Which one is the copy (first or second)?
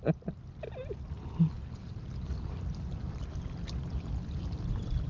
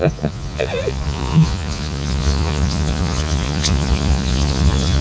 second